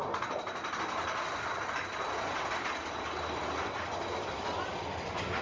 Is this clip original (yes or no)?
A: yes